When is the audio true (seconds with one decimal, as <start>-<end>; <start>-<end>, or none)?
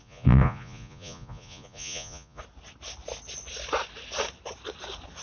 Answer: 2.4-5.2